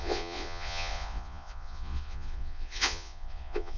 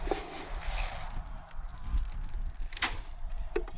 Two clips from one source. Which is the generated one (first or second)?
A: first